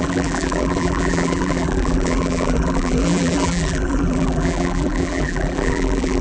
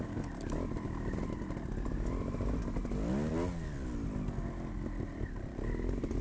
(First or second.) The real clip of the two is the second